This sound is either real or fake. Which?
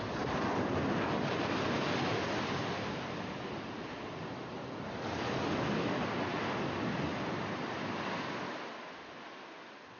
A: real